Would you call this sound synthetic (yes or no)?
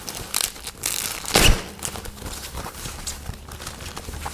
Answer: no